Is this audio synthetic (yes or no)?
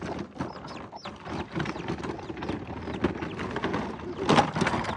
no